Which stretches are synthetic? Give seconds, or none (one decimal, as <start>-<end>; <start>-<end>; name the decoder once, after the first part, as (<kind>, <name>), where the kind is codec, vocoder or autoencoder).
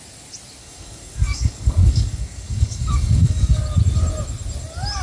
0.6-3.6 (codec, DAC)